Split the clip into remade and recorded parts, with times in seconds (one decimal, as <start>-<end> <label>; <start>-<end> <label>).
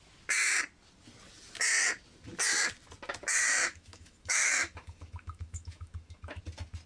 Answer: 0.0-3.6 recorded; 3.6-6.4 remade; 6.4-6.9 recorded